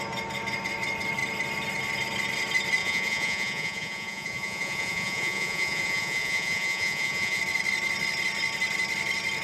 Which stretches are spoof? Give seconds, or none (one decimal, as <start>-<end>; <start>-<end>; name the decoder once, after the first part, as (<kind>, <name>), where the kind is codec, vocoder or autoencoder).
2.8-7.4 (vocoder, Vocos)

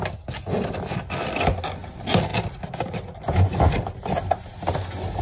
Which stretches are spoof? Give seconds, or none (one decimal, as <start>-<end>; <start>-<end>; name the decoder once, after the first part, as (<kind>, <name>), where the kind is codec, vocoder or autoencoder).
none

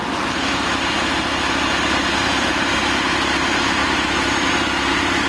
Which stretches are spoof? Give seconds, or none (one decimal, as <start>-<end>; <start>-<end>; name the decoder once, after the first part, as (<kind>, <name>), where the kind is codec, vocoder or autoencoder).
3.8-4.3 (autoencoder, DAC-VAE)

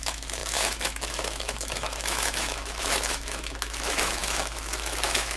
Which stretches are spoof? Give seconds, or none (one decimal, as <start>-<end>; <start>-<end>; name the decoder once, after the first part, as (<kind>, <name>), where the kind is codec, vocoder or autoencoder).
0.0-5.4 (autoencoder, DAC-VAE)

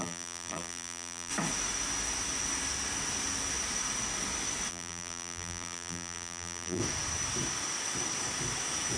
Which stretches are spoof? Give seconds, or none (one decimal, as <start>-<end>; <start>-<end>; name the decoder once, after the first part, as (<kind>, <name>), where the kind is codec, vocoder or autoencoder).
0.0-1.3 (vocoder, BigVGAN v2); 4.7-6.8

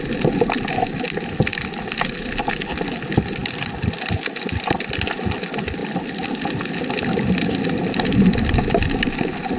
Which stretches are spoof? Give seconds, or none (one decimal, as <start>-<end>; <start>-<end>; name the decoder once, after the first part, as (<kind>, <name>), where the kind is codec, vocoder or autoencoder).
none

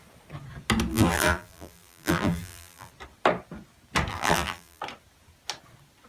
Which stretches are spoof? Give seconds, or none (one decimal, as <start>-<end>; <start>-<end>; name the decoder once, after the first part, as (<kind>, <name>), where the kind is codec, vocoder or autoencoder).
0.9-2.9 (vocoder, BigVGAN v2); 4.1-4.8

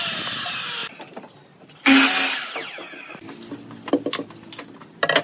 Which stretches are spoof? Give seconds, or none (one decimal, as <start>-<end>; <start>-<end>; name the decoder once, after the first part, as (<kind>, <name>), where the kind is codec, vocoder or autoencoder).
none